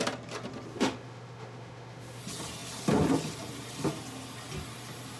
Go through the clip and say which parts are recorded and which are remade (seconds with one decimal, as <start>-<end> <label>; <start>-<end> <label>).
0.0-0.7 recorded; 0.7-2.2 remade; 2.2-5.2 recorded